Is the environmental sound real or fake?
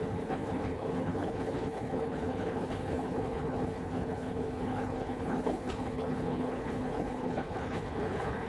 fake